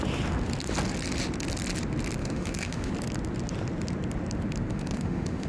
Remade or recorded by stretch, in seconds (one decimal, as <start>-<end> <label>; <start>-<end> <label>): 0.0-2.2 recorded; 2.2-2.9 remade; 2.9-4.7 recorded; 4.7-5.5 remade